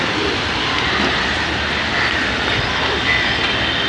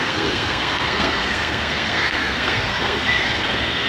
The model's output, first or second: second